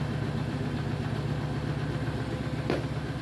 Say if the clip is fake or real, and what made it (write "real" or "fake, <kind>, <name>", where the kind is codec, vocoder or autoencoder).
real